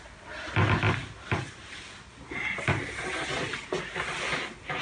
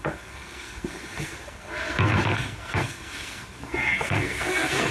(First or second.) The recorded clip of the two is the first